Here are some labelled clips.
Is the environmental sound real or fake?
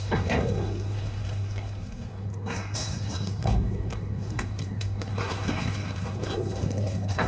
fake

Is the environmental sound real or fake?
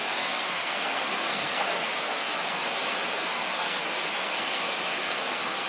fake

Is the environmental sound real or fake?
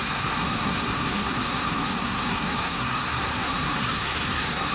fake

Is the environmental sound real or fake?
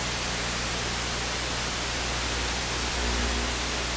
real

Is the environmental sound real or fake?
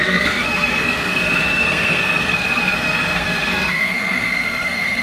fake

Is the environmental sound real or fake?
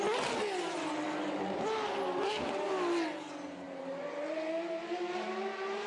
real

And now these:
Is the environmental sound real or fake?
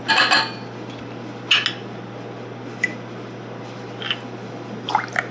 real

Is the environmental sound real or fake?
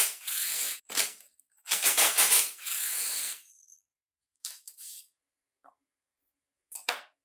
fake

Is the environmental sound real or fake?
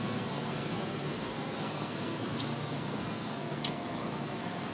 fake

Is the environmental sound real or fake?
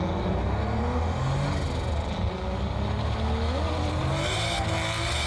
real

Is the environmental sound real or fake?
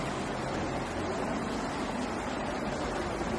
real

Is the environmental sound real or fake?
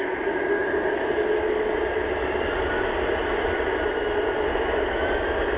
real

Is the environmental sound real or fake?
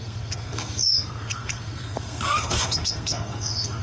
fake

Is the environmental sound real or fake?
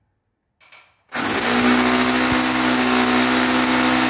real